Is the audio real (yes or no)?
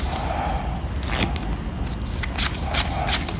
yes